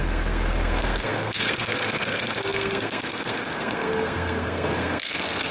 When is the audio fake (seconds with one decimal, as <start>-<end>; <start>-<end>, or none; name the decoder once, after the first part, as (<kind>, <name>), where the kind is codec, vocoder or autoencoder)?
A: 0.0-5.5 (codec, SNAC)